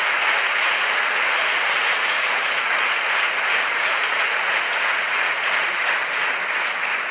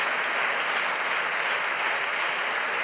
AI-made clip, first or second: first